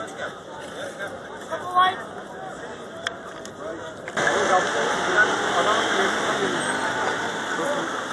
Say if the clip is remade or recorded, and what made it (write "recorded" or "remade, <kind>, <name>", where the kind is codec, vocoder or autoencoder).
recorded